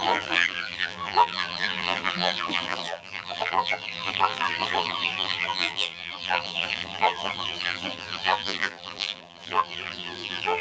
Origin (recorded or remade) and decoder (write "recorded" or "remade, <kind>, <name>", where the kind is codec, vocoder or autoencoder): remade, vocoder, BigVGAN v2